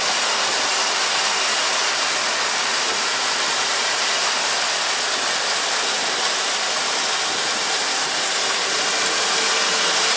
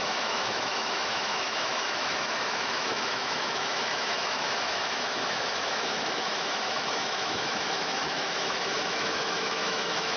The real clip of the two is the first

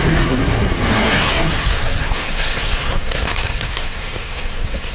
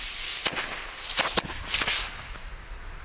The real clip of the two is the second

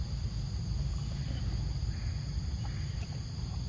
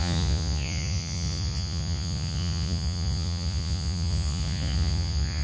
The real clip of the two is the first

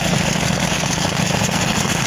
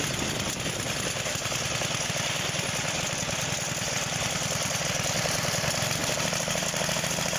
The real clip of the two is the second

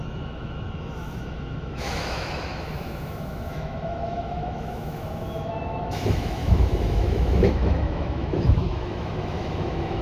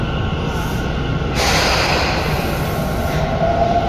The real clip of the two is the second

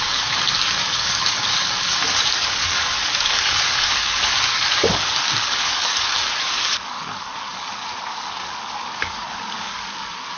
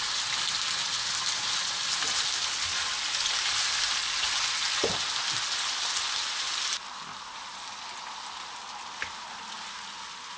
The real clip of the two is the second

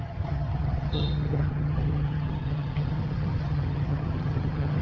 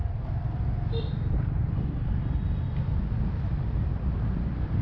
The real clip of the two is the second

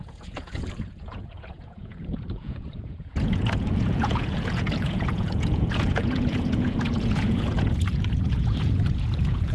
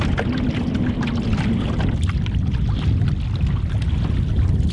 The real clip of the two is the second